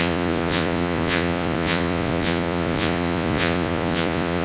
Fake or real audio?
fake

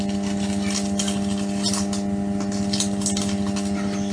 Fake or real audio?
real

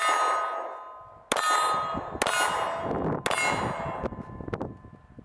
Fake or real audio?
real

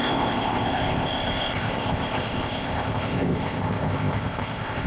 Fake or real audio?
fake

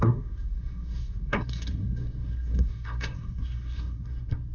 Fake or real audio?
fake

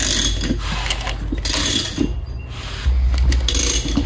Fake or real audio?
real